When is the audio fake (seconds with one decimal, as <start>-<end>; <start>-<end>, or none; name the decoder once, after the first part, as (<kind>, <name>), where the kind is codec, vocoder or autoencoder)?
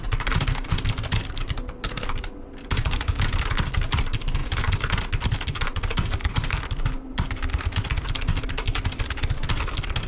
none